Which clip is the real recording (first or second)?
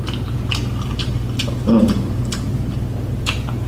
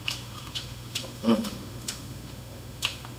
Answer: first